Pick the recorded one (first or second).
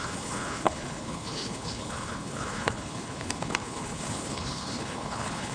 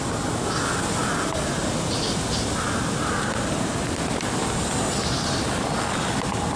second